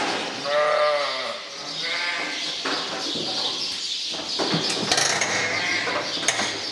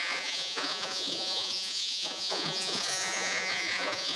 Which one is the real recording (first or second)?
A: first